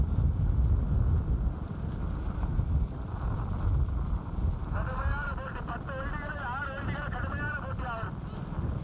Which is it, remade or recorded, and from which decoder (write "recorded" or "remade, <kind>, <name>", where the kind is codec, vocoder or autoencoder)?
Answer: recorded